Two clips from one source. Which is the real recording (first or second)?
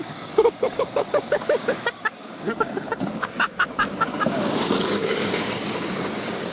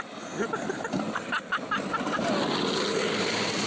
second